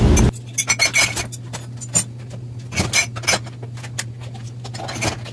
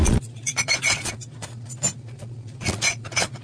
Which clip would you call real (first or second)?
first